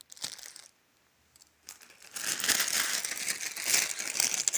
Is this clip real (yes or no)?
yes